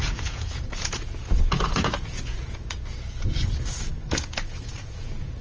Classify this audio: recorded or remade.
remade